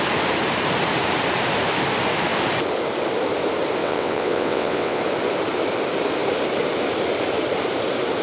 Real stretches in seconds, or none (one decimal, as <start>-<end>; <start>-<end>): 0.0-3.8; 5.0-8.2